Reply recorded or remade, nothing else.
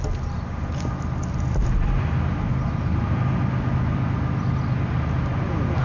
recorded